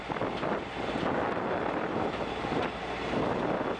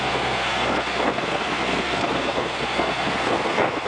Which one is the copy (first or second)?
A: second